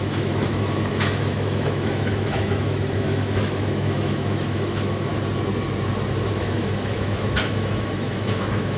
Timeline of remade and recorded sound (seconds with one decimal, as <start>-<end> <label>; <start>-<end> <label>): 0.0-5.1 remade; 5.1-6.4 recorded; 6.4-8.8 remade